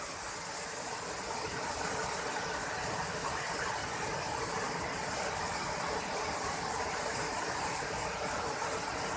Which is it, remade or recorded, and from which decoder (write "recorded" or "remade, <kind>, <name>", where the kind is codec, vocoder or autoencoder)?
recorded